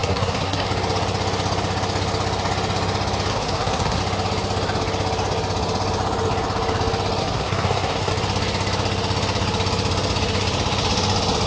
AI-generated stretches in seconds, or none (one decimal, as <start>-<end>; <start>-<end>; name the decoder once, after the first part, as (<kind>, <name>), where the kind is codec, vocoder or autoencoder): 0.0-0.7 (codec, SNAC); 3.3-4.0; 7.2-8.1